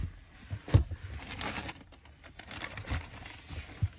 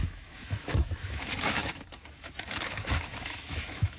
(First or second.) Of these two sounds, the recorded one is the first